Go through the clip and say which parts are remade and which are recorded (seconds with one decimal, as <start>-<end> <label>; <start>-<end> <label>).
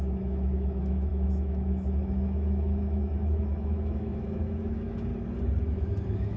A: 0.0-5.1 remade; 5.1-5.6 recorded; 5.6-6.4 remade